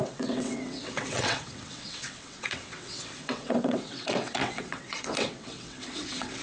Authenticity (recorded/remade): remade